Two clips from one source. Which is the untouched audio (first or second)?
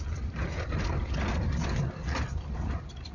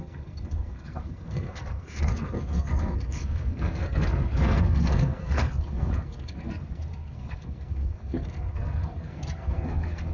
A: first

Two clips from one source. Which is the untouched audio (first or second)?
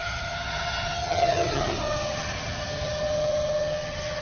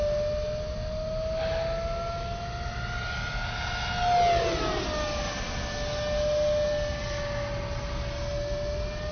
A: second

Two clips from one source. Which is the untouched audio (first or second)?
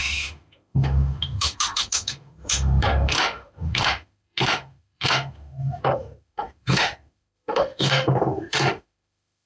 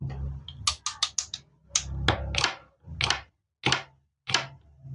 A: second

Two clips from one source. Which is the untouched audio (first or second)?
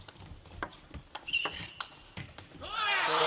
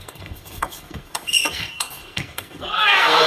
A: first